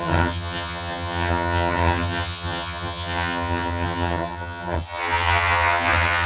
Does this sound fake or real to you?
fake